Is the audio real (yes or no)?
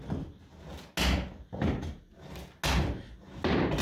yes